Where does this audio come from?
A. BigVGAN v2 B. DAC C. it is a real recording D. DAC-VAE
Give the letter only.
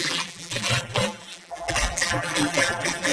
A